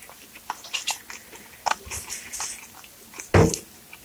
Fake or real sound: real